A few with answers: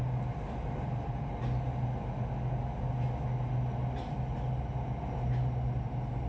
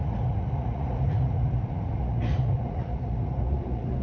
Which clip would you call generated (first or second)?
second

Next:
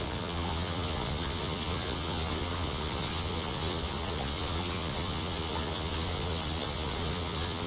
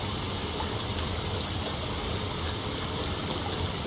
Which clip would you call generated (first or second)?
first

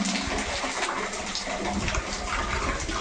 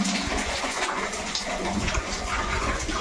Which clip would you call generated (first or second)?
second